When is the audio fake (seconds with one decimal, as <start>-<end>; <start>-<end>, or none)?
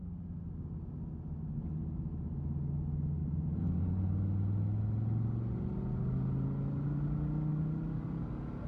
3.2-3.8; 7.5-8.2